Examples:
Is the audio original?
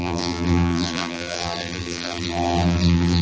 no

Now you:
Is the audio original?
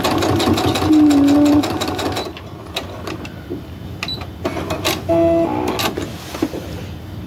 yes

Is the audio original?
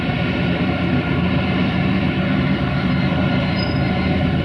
no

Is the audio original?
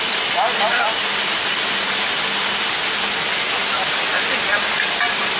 no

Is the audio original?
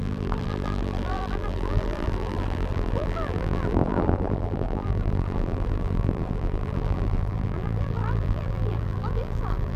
no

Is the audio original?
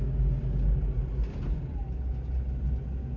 yes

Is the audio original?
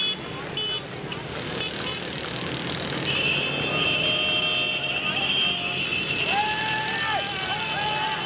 yes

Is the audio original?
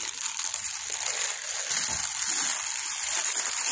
yes